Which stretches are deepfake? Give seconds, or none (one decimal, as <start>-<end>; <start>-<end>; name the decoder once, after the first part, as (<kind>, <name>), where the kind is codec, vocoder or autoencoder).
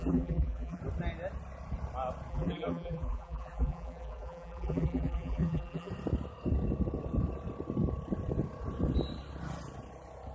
0.0-0.8 (vocoder, BigVGAN v2); 2.3-5.9